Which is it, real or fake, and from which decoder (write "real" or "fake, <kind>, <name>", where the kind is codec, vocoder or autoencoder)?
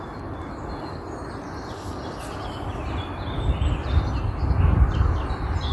real